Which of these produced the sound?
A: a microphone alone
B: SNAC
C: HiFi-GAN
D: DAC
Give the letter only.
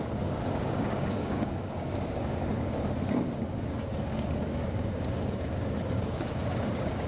D